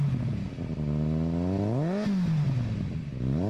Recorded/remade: recorded